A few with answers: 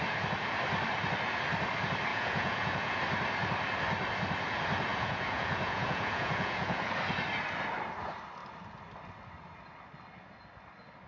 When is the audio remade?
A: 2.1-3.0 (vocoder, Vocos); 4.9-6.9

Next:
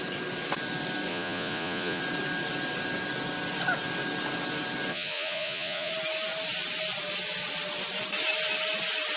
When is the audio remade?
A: 1.1-2.0 (vocoder, Vocos); 4.9-5.9

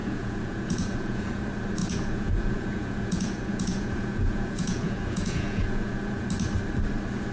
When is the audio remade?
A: 0.0-1.4 (vocoder, Vocos); 1.8-6.2

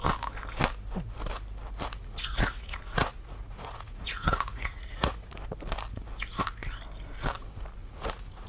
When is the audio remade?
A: 2.0-5.3 (vocoder, Vocos); 7.8-8.5